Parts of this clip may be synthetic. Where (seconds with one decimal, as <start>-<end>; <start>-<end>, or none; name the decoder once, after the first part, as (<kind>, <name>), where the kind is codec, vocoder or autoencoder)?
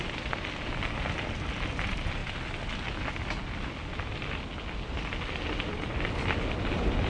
none